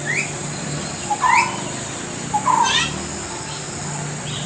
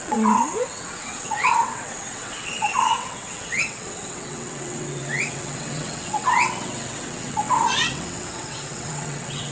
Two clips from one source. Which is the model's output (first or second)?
second